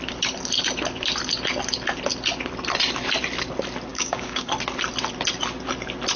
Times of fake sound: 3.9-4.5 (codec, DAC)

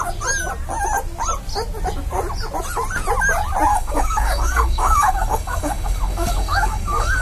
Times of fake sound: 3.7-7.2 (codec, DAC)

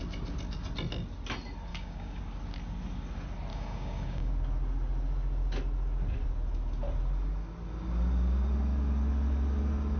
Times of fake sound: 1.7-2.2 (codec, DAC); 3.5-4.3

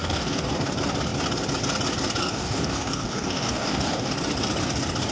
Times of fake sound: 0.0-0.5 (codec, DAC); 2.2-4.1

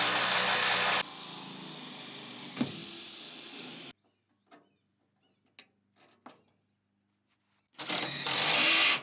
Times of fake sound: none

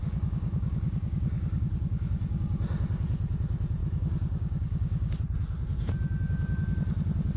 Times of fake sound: 0.0-2.4 (codec, DAC); 3.8-5.1

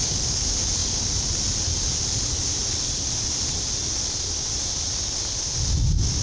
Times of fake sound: none

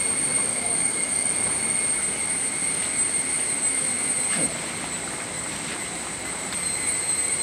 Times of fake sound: 0.5-1.3 (codec, DAC)